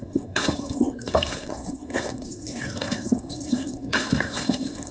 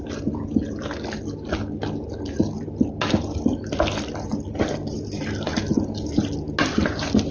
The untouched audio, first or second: second